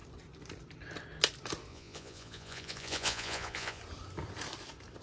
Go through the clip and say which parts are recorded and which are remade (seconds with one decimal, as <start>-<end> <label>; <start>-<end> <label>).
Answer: 0.0-1.7 recorded; 1.7-3.8 remade; 3.8-5.0 recorded

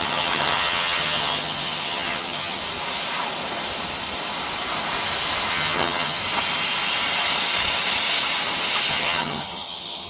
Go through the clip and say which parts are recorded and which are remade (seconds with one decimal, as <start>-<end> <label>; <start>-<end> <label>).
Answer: 0.0-2.6 remade; 2.6-5.5 recorded; 5.5-6.2 remade; 6.2-8.9 recorded; 8.9-10.1 remade

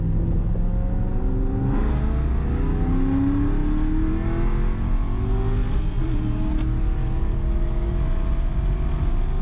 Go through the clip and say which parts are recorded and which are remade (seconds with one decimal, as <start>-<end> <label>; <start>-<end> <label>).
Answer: 0.0-7.0 recorded; 7.0-8.0 remade; 8.0-9.4 recorded

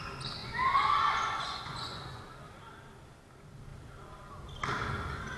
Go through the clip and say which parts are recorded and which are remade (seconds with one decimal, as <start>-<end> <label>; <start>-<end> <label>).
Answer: 0.0-0.4 recorded; 0.4-2.2 remade; 2.2-5.4 recorded